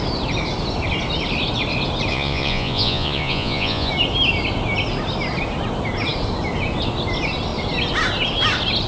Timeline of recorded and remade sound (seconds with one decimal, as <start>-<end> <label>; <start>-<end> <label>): 0.0-2.1 recorded; 2.1-3.9 remade; 3.9-8.9 recorded